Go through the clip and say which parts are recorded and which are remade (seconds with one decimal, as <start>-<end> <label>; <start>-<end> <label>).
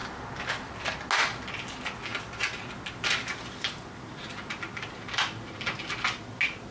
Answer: 0.0-6.7 recorded